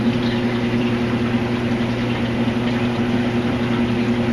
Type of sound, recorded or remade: recorded